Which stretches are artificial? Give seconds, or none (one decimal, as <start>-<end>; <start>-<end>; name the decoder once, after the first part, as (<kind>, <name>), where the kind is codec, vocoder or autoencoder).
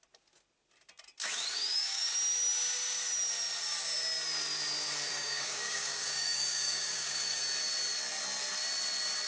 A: 1.2-2.1 (codec, DAC); 5.1-7.4